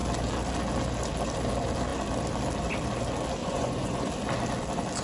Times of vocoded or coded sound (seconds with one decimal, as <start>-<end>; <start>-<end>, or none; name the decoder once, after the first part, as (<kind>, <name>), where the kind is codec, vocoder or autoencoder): 3.4-4.1 (vocoder, Vocos)